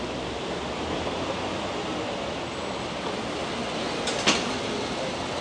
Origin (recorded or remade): recorded